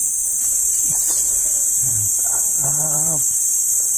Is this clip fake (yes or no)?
yes